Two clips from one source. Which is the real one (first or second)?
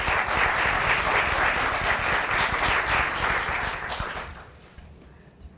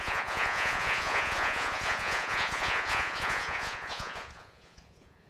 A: first